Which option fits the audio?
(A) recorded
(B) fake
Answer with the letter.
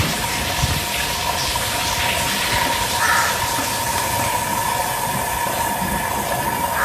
A